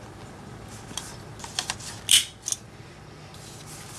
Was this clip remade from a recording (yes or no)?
no